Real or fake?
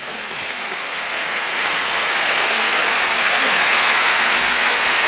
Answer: fake